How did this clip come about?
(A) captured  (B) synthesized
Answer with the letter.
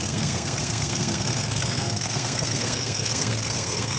B